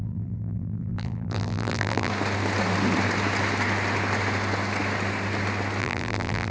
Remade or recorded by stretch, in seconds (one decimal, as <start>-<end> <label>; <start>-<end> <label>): 0.0-2.1 remade; 2.1-5.8 recorded; 5.8-6.5 remade